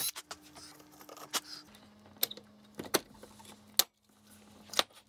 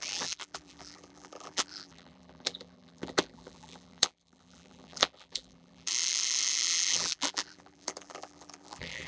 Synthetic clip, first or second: second